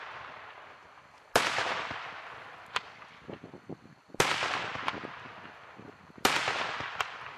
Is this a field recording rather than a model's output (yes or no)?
no